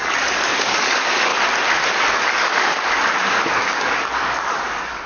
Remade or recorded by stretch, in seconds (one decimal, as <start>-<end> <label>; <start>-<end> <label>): 0.0-1.3 remade; 1.3-2.0 recorded; 2.0-5.1 remade